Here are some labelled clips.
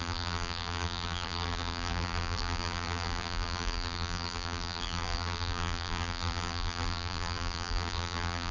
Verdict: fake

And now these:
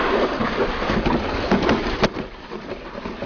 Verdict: real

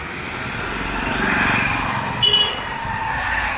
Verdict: real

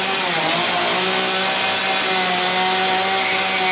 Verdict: real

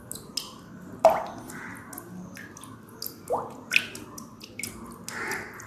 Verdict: real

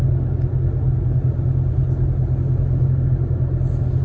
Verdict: real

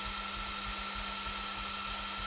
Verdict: real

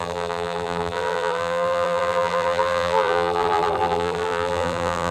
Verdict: fake